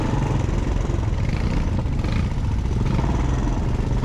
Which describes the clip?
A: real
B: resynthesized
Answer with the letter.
A